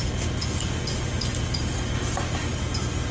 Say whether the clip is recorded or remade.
recorded